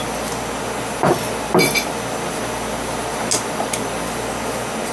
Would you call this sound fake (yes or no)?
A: no